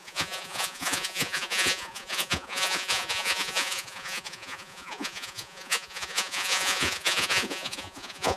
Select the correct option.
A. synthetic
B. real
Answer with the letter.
A